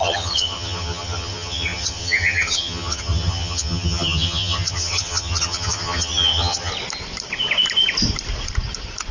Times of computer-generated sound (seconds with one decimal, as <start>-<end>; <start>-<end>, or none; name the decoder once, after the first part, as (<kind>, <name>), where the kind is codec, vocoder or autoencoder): 0.0-6.7 (vocoder, HiFi-GAN)